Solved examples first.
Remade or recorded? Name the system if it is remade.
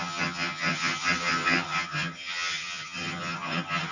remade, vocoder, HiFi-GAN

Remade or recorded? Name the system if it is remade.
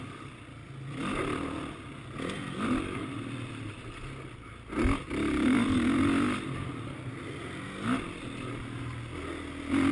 recorded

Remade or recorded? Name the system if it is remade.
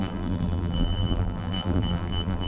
remade, vocoder, BigVGAN v2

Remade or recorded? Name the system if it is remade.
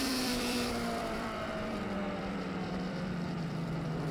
remade, vocoder, BigVGAN v2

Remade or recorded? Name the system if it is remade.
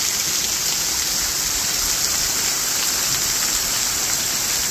recorded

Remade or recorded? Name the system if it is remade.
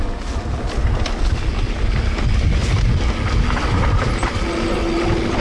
recorded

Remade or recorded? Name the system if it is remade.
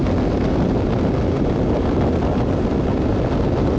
recorded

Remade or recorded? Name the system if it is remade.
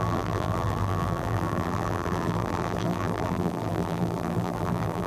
remade, vocoder, BigVGAN v2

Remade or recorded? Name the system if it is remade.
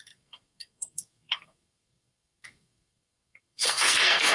remade, codec, SNAC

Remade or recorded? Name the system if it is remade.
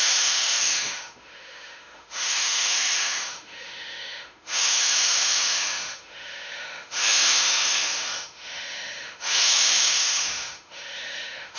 remade, autoencoder, DAC-VAE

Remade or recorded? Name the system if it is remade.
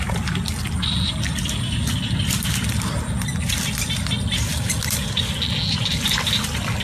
recorded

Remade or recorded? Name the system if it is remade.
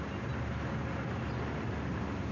recorded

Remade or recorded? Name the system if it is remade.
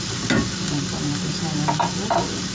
recorded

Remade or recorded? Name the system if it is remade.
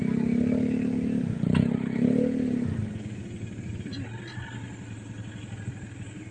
recorded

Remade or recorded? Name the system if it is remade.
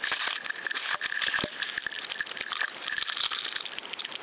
recorded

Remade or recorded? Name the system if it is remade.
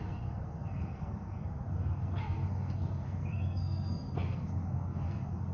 remade, codec, SNAC